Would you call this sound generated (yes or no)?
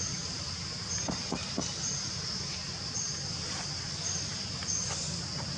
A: no